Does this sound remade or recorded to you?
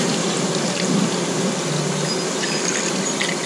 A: recorded